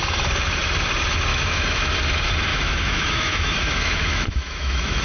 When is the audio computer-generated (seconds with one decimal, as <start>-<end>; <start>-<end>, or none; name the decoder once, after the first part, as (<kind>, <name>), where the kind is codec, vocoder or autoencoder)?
1.3-1.9 (autoencoder, DAC-VAE); 2.5-5.0